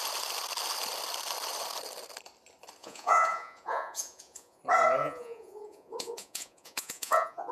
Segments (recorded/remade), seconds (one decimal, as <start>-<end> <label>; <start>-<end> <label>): 0.0-2.8 recorded; 2.8-4.6 remade; 4.6-5.0 recorded; 5.0-7.5 remade